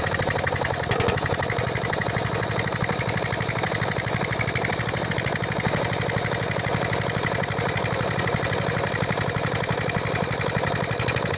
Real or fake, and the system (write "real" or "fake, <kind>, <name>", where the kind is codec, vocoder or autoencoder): real